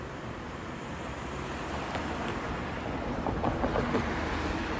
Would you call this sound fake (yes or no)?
no